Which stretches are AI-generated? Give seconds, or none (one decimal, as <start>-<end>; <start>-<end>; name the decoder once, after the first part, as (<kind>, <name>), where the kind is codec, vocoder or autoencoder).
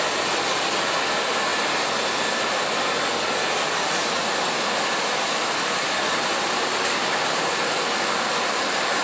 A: none